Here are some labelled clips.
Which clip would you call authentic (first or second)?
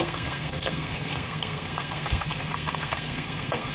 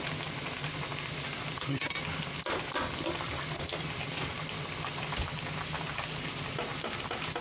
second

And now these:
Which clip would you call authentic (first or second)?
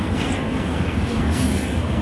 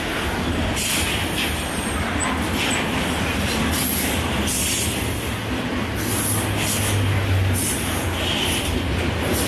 second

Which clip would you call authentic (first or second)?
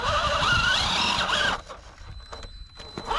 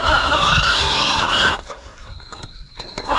first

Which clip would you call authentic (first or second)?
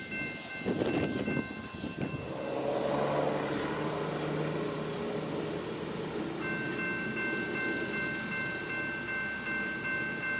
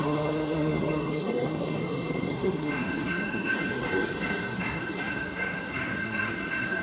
first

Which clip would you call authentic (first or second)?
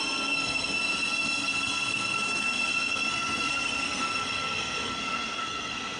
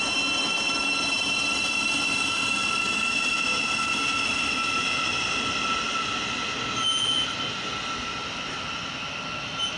second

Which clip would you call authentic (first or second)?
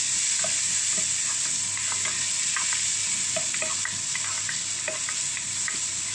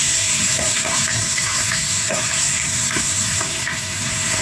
first